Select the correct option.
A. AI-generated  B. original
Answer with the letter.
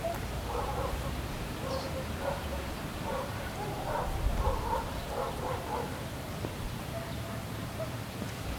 A